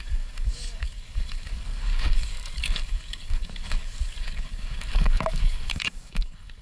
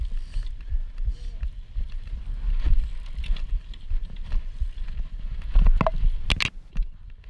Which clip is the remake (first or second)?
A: first